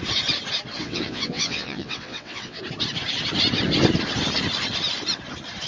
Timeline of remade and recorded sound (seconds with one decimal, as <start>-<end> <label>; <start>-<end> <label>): 0.0-0.8 recorded; 0.8-2.6 remade; 2.6-5.7 recorded